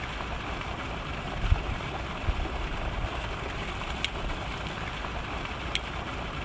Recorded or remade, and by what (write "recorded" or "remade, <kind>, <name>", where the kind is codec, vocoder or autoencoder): recorded